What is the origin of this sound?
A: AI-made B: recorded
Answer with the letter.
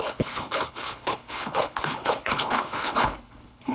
A